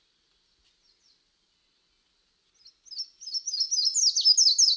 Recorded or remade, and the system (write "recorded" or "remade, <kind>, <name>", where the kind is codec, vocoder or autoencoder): recorded